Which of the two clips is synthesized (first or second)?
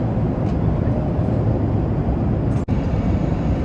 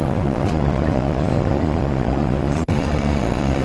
second